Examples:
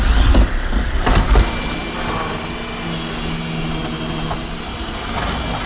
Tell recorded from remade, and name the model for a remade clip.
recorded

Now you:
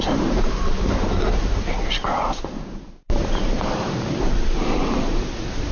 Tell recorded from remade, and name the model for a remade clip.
remade, vocoder, BigVGAN v2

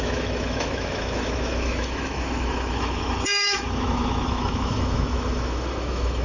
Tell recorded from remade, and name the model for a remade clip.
remade, autoencoder, DAC-VAE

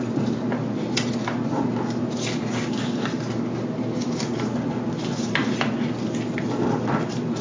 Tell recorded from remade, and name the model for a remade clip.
recorded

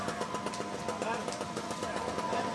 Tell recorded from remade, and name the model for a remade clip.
recorded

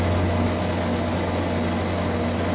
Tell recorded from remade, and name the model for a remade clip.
recorded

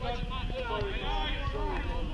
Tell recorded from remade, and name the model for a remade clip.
recorded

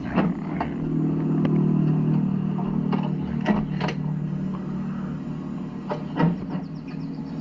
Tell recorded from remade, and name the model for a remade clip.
recorded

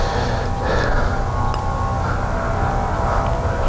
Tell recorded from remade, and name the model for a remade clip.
recorded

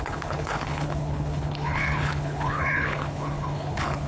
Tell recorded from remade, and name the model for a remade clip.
remade, codec, HILCodec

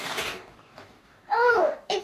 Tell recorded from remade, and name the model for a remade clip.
remade, codec, DAC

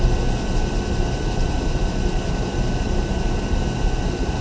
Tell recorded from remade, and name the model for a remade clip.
recorded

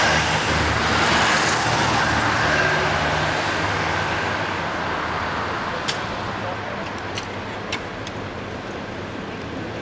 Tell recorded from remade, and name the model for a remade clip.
recorded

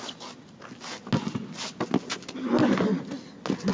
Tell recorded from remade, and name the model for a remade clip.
recorded